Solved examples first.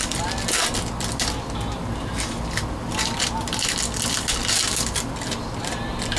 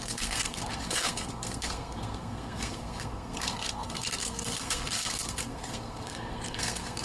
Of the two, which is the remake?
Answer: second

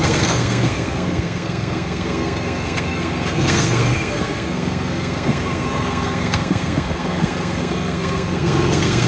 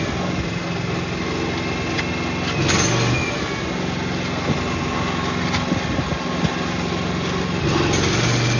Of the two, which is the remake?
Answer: first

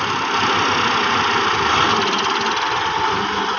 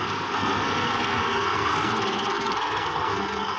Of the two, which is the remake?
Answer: second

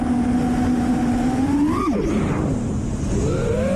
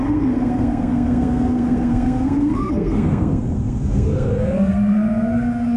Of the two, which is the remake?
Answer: second